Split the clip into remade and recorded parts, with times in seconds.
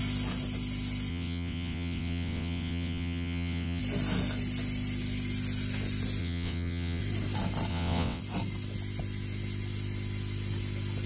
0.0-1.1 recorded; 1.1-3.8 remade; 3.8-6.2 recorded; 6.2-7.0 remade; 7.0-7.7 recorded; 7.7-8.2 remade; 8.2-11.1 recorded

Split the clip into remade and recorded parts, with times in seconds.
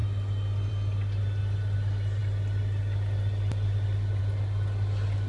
0.0-5.3 recorded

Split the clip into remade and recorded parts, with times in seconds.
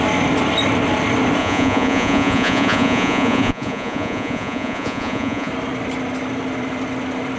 0.0-1.4 recorded; 1.4-5.5 remade; 5.5-7.4 recorded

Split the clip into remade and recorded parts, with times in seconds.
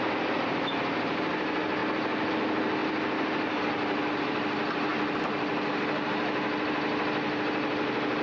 0.0-8.2 recorded